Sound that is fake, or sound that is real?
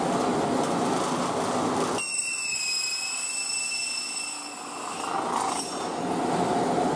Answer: real